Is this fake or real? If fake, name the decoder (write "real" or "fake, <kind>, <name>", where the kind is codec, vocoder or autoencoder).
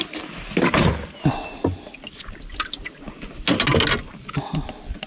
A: real